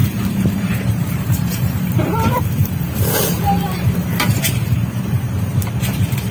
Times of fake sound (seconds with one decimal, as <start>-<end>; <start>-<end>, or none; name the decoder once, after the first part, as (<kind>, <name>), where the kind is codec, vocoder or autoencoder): 0.0-6.3 (vocoder, BigVGAN v2)